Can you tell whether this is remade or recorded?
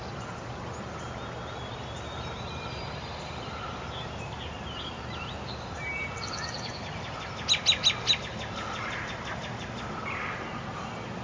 recorded